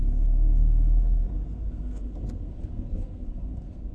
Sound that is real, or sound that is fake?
fake